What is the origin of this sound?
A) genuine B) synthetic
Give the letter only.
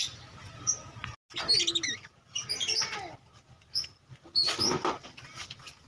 A